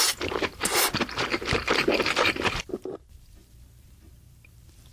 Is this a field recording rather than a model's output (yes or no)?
no